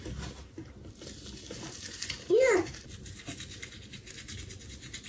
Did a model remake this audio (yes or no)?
no